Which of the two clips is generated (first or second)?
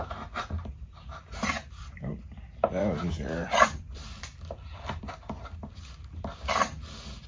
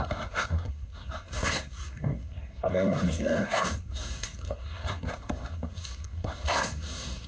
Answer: second